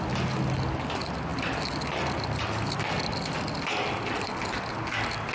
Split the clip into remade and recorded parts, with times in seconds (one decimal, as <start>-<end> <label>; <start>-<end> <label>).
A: 0.0-5.3 recorded